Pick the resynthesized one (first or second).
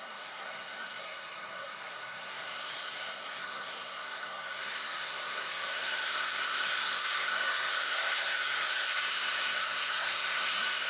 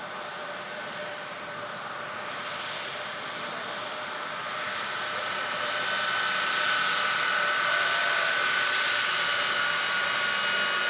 first